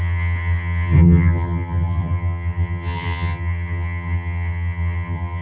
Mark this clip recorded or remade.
remade